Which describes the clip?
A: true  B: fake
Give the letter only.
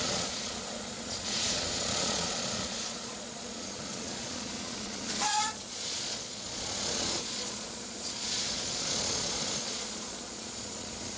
B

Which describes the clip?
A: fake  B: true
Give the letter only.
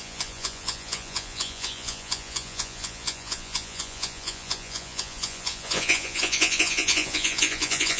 A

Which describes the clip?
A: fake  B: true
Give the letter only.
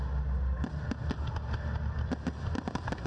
B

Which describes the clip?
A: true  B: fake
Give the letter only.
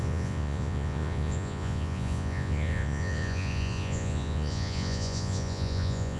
B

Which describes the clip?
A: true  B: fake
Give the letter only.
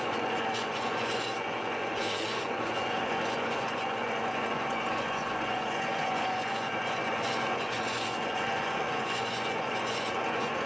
B